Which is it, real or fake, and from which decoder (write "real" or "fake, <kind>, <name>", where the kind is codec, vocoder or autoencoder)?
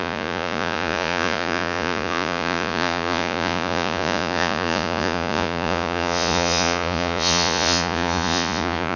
fake, vocoder, Vocos